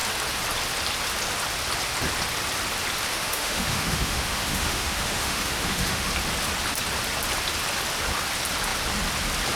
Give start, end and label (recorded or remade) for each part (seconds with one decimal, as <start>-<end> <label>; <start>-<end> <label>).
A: 0.0-3.1 recorded; 3.1-6.1 remade; 6.1-9.6 recorded